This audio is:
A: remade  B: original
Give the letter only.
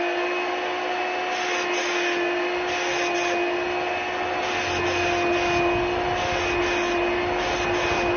B